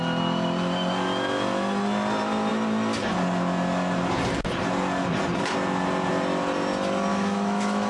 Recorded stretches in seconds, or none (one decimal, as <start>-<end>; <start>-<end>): 0.0-7.1